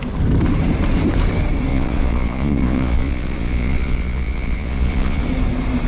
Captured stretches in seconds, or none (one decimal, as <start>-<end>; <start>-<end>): 0.0-1.7; 5.2-5.9